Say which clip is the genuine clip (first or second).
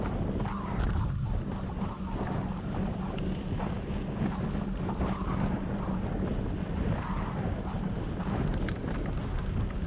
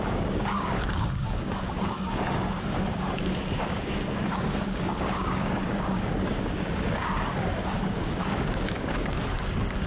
first